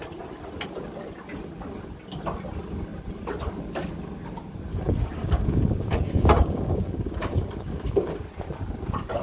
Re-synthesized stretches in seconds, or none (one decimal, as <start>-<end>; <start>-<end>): 4.7-8.2